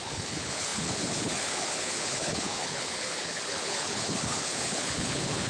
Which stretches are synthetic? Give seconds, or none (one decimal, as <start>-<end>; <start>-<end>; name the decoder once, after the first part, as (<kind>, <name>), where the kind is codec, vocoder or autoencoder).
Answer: 0.0-5.5 (codec, HILCodec)

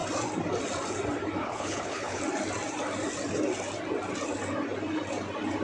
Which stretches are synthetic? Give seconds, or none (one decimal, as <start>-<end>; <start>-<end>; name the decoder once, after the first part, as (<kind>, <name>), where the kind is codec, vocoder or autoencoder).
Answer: 1.4-2.2 (codec, HILCodec)

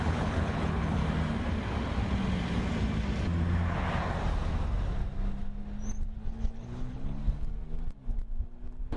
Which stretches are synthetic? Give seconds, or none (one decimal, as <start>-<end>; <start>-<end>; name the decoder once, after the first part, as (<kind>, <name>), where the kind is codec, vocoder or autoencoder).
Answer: 0.0-1.0 (codec, HILCodec); 6.2-7.2

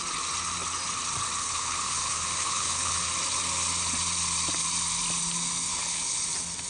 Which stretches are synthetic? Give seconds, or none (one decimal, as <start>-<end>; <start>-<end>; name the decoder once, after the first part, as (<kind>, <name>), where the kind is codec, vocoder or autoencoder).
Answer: 1.4-3.1 (codec, HILCodec); 5.7-6.3